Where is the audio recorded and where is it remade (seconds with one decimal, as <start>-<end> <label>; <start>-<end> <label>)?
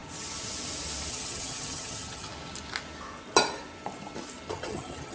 0.0-1.1 recorded; 1.1-2.3 remade; 2.3-4.5 recorded; 4.5-5.1 remade